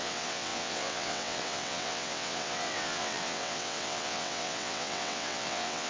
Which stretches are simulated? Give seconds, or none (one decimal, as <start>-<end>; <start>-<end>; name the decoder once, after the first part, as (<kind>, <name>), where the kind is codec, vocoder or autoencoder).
0.0-5.9 (vocoder, WaveNeXt)

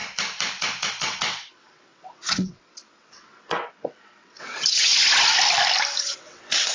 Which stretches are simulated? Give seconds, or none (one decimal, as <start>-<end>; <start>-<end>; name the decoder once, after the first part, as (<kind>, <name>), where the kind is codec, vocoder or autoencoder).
0.9-4.9 (vocoder, WaveNeXt); 6.0-6.7

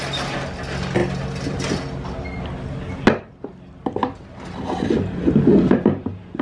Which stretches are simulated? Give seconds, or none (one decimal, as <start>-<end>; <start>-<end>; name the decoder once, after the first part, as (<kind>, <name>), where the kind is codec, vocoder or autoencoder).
none

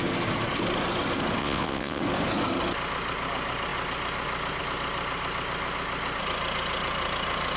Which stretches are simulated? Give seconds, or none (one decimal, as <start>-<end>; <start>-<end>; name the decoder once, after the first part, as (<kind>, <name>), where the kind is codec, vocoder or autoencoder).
1.4-2.0 (vocoder, WaveNeXt)

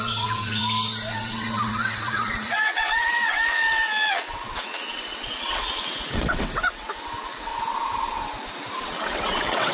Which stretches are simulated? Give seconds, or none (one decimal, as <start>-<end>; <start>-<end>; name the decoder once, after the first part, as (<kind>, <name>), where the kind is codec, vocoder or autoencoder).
0.0-0.6 (vocoder, WaveNeXt); 1.1-7.5; 8.8-9.7